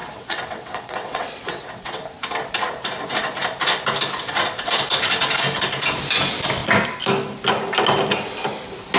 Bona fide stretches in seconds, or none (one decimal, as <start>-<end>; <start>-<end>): 2.0-9.0